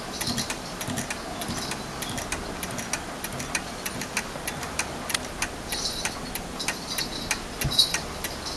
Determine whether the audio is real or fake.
real